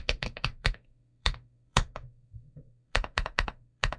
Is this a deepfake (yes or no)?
yes